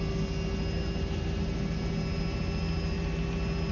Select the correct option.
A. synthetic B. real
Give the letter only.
B